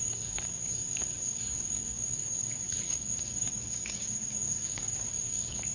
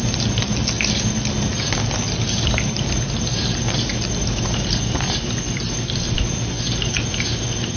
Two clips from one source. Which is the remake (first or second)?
first